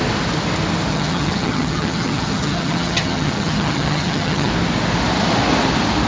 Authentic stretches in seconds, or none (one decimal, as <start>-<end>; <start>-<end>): 0.0-0.9; 4.5-6.1